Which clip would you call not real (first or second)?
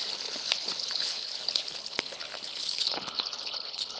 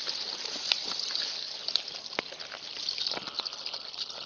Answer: first